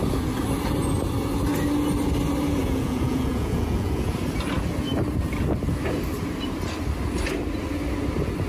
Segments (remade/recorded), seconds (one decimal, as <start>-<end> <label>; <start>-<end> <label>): 0.0-2.6 recorded; 2.6-4.1 remade; 4.1-8.5 recorded